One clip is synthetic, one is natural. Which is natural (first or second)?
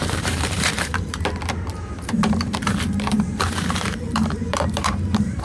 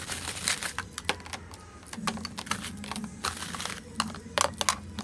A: second